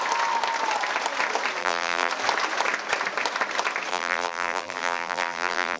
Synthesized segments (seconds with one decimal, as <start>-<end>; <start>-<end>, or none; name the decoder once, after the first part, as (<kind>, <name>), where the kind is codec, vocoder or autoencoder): 1.6-2.1 (vocoder, BigVGAN v2); 3.9-5.8